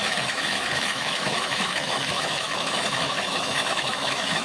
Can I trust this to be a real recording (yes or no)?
no